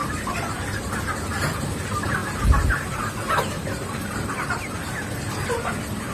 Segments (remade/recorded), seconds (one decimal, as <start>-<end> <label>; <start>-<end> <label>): 0.0-0.9 remade; 0.9-6.1 recorded